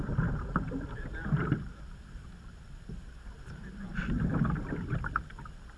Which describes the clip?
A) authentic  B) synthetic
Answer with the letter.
B